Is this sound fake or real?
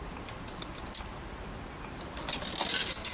real